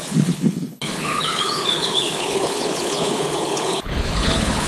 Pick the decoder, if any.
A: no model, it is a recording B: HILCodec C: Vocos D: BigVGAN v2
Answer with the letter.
B